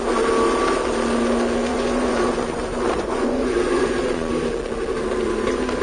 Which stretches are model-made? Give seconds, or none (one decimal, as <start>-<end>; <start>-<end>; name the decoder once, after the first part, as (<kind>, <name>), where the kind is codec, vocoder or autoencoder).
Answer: 1.7-4.3 (vocoder, Vocos)